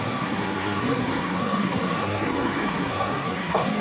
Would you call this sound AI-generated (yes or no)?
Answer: yes